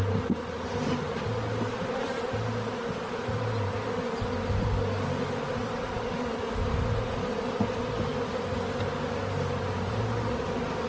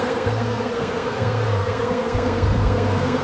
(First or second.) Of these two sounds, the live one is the first